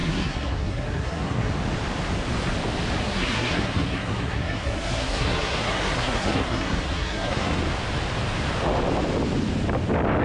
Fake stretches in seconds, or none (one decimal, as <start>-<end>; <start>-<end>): 0.0-1.5; 3.0-7.6